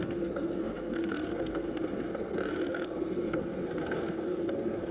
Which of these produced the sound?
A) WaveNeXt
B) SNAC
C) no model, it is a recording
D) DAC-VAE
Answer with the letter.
B